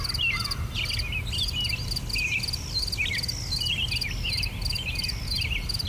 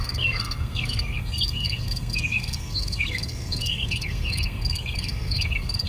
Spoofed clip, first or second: second